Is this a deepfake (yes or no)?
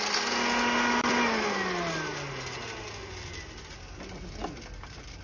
no